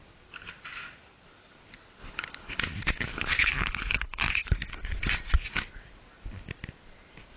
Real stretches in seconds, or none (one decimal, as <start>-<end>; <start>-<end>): 0.0-2.0; 2.6-3.1; 4.6-7.4